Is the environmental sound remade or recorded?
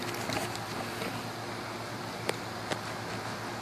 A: recorded